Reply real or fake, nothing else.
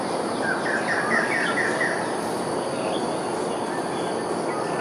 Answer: real